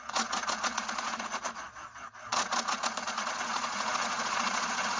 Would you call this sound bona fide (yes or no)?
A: no